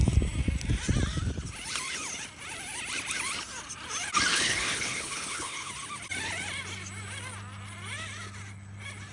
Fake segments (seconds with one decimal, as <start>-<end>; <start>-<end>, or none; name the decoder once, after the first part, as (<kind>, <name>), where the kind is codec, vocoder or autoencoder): 4.3-5.7 (codec, HILCodec)